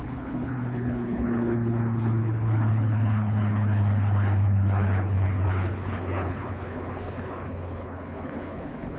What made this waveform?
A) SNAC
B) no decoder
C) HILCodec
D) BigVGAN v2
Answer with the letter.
C